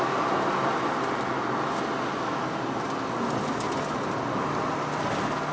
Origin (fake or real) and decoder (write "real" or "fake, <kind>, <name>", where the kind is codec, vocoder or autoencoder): real